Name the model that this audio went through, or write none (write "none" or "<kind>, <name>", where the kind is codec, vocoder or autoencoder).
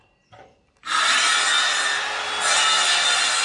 none